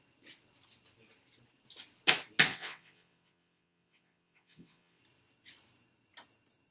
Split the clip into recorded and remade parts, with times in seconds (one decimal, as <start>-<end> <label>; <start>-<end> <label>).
0.0-2.5 recorded; 2.5-5.0 remade; 5.0-6.7 recorded